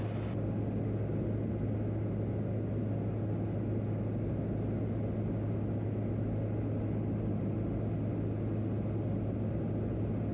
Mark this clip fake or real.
real